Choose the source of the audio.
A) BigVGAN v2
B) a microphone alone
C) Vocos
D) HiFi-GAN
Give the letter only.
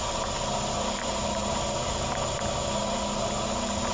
B